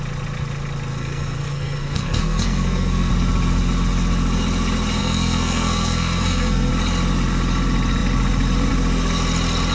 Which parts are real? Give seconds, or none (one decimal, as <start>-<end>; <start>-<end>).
0.0-0.9; 3.1-5.0; 6.7-9.7

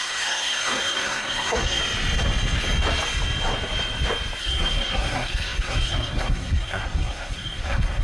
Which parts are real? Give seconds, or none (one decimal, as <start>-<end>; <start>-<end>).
1.8-4.4

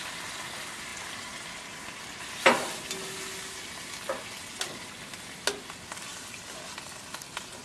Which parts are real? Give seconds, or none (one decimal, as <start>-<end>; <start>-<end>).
0.0-7.6

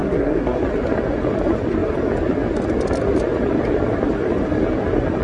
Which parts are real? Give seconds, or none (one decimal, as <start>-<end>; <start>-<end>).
0.6-5.2

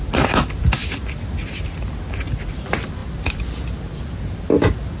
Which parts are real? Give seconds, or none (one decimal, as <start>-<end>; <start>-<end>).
0.0-5.0

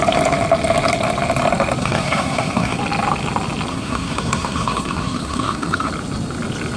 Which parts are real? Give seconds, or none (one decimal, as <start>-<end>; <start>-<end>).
0.0-1.8; 2.8-3.7; 5.9-6.8

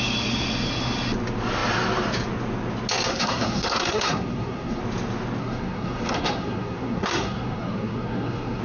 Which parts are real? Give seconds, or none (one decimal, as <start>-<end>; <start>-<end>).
0.0-3.1; 4.8-5.4

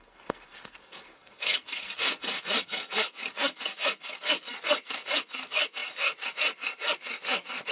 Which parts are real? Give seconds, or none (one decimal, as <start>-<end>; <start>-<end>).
none